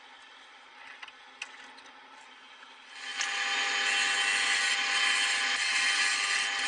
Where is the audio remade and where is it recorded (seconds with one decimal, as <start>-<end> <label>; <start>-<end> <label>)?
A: 0.0-6.7 recorded